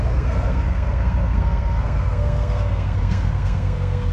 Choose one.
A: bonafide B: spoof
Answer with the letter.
B